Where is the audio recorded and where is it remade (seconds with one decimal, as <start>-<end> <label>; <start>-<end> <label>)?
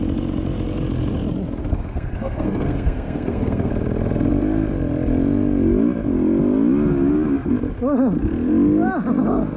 0.0-1.6 recorded; 1.6-3.7 remade; 3.7-9.6 recorded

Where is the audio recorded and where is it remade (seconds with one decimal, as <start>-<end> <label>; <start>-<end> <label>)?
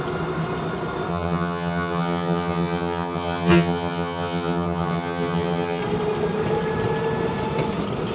0.0-1.1 recorded; 1.1-5.8 remade; 5.8-8.1 recorded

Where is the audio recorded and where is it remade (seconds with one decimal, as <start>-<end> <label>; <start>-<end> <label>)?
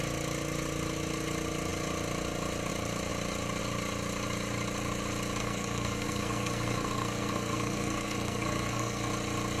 0.0-5.4 recorded; 5.4-9.1 remade; 9.1-9.6 recorded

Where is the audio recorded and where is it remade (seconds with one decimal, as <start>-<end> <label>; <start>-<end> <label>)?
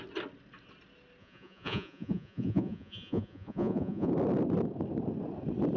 0.0-1.2 recorded; 1.2-4.1 remade; 4.1-5.8 recorded